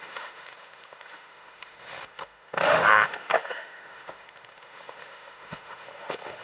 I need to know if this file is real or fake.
fake